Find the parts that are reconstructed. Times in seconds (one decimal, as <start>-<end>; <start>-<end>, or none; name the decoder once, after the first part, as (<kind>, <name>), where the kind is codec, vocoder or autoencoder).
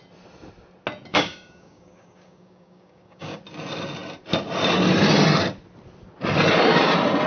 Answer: 1.1-3.4 (codec, DAC)